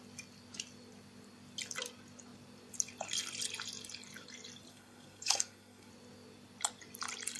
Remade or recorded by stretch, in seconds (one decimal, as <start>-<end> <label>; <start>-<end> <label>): 0.0-4.7 recorded; 4.7-5.9 remade; 5.9-7.4 recorded